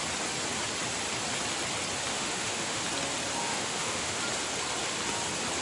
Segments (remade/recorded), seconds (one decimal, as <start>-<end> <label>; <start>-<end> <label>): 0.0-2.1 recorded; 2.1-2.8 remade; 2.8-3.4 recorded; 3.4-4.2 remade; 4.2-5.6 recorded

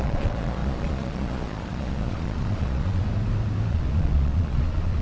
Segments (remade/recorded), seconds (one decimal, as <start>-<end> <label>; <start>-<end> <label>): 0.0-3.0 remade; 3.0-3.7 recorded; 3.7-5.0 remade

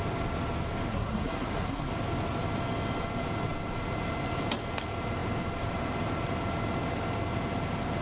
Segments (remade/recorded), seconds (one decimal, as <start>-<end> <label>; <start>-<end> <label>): 0.0-0.9 recorded; 0.9-1.9 remade; 1.9-8.0 recorded

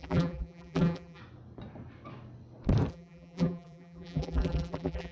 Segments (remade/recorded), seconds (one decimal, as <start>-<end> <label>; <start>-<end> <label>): 0.0-1.2 remade; 1.2-2.9 recorded; 2.9-5.1 remade

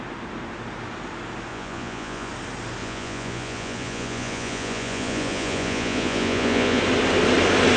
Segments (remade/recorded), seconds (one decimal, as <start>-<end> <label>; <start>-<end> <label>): 0.0-1.5 recorded; 1.5-2.3 remade; 2.3-2.8 recorded; 2.8-6.8 remade; 6.8-7.8 recorded

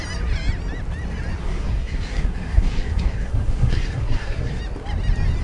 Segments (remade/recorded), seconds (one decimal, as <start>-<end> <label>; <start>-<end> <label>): 0.0-1.4 recorded; 1.4-4.6 remade; 4.6-5.4 recorded

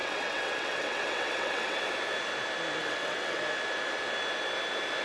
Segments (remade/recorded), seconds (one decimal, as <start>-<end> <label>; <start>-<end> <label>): 0.0-1.9 remade; 1.9-2.8 recorded; 2.8-3.4 remade; 3.4-5.0 recorded